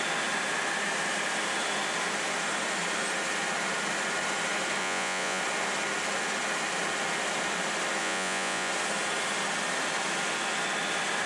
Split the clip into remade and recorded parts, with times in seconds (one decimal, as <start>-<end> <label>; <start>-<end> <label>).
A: 0.0-4.8 recorded; 4.8-5.4 remade; 5.4-8.0 recorded; 8.0-8.7 remade; 8.7-11.3 recorded